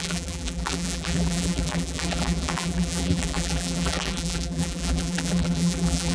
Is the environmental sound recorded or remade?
remade